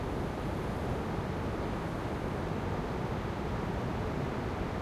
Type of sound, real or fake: real